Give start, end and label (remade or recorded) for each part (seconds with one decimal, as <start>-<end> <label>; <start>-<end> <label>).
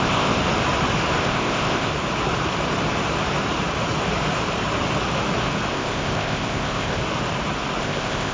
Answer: 0.0-0.4 remade; 0.4-1.2 recorded; 1.2-1.9 remade; 1.9-5.7 recorded; 5.7-7.0 remade; 7.0-7.8 recorded; 7.8-8.3 remade